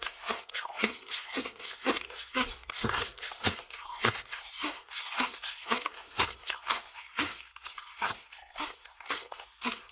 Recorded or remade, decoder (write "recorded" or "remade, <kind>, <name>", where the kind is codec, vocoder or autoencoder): remade, codec, SNAC